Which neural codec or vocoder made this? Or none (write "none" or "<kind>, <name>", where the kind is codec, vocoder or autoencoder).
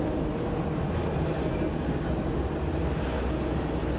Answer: none